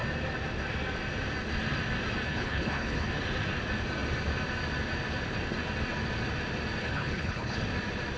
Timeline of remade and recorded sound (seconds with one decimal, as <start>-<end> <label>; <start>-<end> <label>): 0.0-2.2 recorded; 2.2-3.1 remade; 3.1-6.8 recorded; 6.8-7.6 remade; 7.6-8.2 recorded